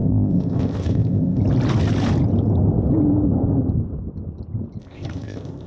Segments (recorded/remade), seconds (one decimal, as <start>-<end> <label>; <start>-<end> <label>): 0.0-1.4 remade; 1.4-4.8 recorded; 4.8-5.7 remade